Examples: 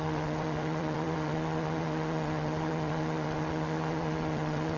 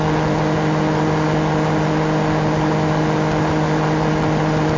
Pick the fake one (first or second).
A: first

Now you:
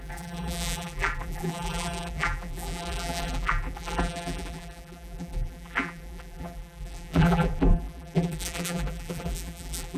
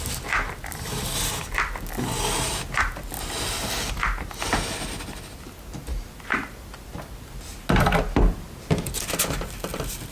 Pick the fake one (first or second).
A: first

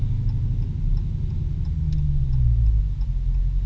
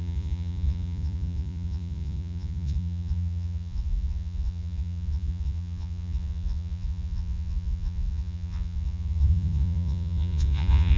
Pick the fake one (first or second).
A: second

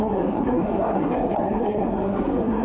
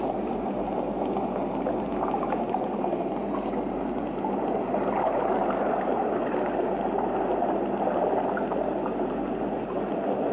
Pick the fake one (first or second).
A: first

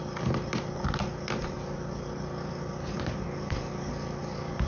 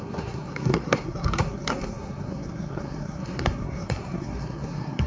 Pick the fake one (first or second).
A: second